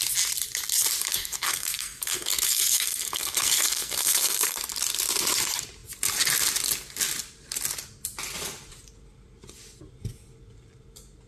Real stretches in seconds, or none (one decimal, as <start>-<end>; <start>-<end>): 0.0-1.0; 4.7-11.3

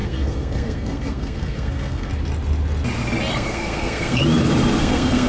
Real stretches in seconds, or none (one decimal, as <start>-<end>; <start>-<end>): 2.1-3.3; 4.2-4.8

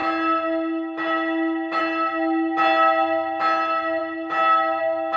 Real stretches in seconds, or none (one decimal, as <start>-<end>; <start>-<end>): 0.0-5.2